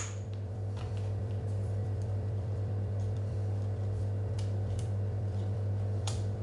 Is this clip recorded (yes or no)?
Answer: no